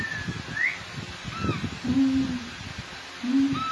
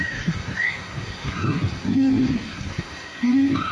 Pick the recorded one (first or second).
first